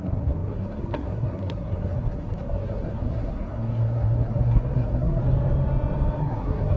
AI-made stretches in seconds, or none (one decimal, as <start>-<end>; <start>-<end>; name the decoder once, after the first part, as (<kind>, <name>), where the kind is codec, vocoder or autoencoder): 0.0-5.2 (codec, SNAC); 6.2-6.8